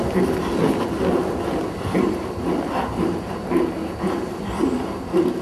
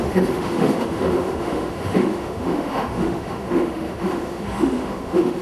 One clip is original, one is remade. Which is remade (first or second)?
second